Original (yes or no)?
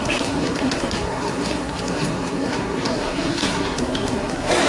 no